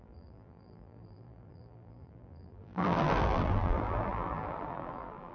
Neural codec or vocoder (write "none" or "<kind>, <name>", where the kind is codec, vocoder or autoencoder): vocoder, BigVGAN v2